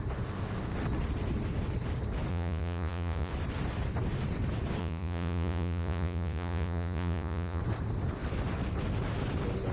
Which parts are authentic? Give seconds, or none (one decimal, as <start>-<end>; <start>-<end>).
0.0-2.3; 3.3-4.8; 7.6-9.7